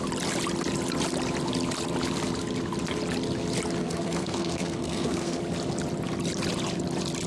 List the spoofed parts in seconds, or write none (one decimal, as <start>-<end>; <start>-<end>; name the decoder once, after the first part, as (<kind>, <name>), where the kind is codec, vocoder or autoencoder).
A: 3.8-5.4 (codec, SNAC)